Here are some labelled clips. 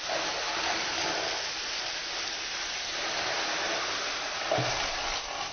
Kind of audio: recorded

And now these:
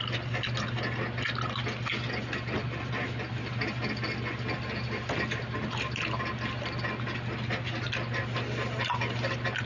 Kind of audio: recorded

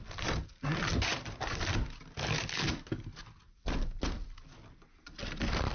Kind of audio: recorded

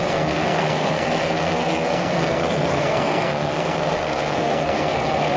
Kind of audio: remade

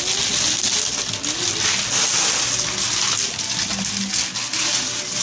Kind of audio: recorded